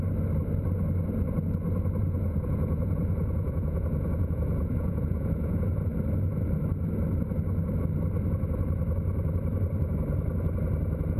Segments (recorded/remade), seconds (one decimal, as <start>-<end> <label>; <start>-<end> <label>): 0.0-2.0 recorded; 2.0-5.8 remade; 5.8-11.2 recorded